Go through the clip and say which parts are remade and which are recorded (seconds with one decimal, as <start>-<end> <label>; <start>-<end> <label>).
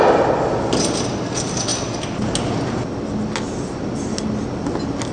0.0-5.1 recorded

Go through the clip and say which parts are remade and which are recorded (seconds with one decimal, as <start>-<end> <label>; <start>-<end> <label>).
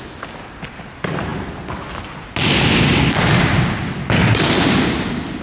0.0-5.4 recorded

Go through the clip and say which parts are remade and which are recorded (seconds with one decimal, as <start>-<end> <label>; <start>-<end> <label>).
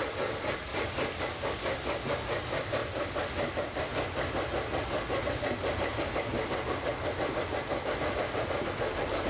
0.0-9.3 recorded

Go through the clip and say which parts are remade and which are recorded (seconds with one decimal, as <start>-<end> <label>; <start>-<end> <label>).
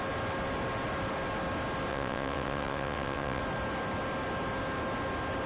0.0-1.9 recorded; 1.9-3.4 remade; 3.4-5.5 recorded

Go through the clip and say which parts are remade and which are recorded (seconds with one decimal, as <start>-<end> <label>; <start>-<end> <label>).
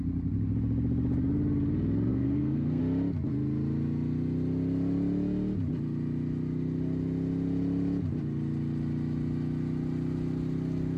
0.0-2.1 recorded; 2.1-2.8 remade; 2.8-11.0 recorded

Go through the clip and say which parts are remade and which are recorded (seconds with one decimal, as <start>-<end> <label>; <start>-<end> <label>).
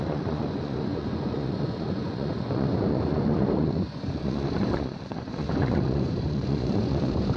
0.0-7.4 remade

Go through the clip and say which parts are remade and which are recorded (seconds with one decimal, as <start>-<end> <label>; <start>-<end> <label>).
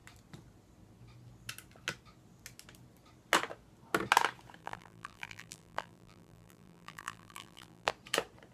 0.0-4.6 recorded; 4.6-7.9 remade; 7.9-8.5 recorded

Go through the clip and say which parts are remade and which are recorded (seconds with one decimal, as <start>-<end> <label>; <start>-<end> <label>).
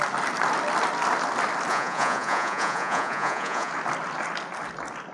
0.0-1.7 recorded; 1.7-3.7 remade; 3.7-5.1 recorded